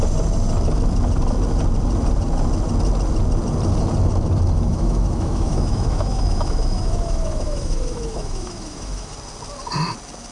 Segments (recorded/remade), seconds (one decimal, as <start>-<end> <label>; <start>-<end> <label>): 0.0-4.7 recorded; 4.7-9.1 remade; 9.1-10.3 recorded